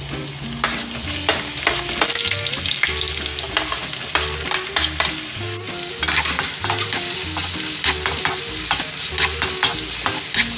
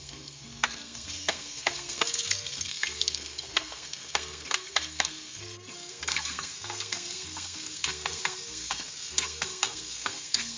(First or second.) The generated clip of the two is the second